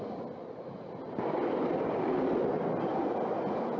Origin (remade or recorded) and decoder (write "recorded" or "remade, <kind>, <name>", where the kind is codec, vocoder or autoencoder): recorded